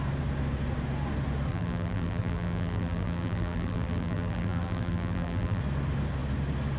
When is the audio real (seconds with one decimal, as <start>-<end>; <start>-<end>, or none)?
0.0-1.5; 5.6-6.8